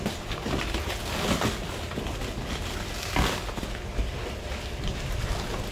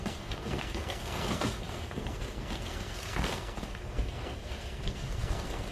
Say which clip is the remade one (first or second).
second